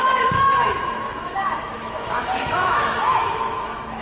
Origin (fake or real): fake